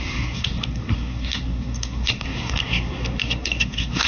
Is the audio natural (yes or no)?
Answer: no